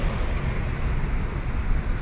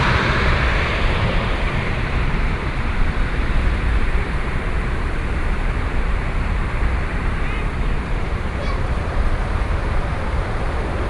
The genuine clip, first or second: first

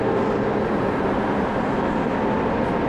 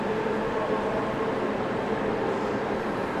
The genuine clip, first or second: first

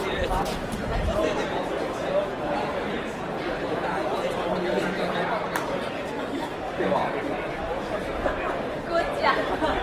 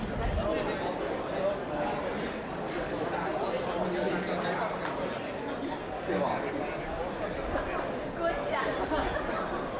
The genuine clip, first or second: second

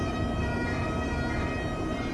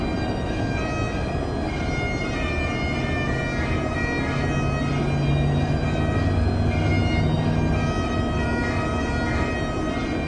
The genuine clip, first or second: second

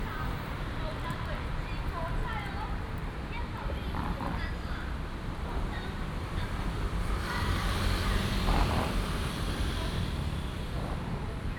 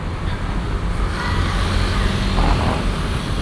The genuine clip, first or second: second